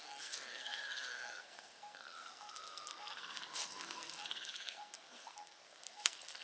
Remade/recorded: remade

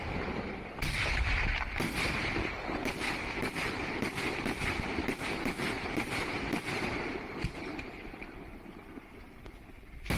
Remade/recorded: remade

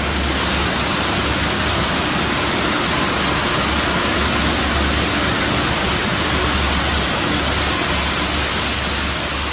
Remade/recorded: recorded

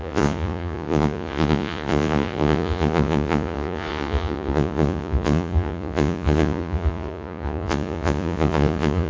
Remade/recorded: remade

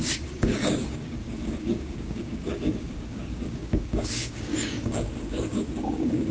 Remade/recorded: remade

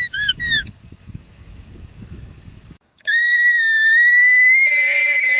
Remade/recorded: remade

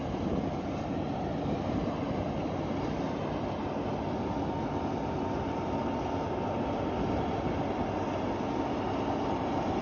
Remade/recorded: recorded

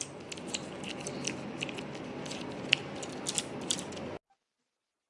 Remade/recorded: recorded